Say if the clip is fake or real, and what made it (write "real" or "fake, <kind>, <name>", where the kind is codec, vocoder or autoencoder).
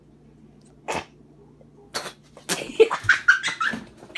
real